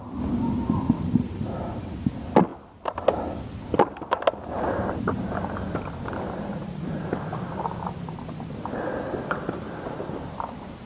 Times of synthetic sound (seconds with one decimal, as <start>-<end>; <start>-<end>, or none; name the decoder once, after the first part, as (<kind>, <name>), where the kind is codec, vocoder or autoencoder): none